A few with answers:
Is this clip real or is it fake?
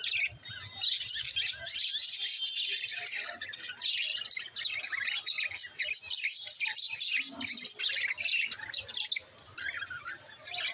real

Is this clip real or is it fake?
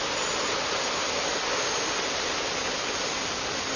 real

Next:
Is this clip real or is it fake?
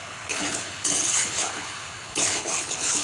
fake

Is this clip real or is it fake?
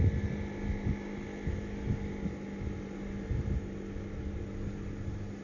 real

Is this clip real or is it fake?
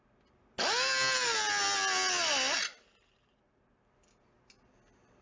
real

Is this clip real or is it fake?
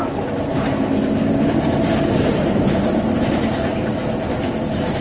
real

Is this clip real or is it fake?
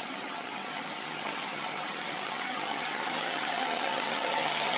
fake